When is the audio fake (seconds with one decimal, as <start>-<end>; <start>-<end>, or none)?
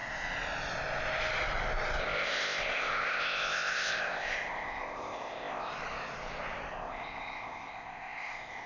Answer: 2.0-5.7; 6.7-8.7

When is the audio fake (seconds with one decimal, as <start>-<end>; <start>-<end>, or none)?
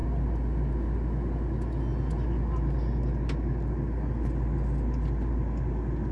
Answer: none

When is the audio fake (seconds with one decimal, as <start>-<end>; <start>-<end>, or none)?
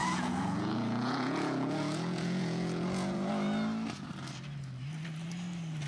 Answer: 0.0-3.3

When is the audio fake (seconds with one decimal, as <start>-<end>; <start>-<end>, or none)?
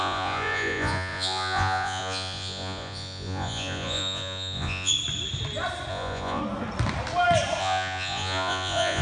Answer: 0.0-4.9; 5.9-6.4; 7.6-9.0